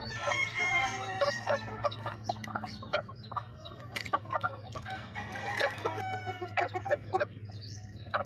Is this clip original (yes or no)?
no